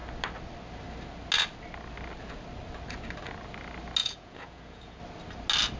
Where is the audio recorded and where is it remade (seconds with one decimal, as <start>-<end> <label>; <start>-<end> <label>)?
0.0-4.0 recorded; 4.0-5.0 remade; 5.0-5.8 recorded